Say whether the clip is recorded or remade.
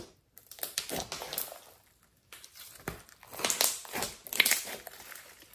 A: recorded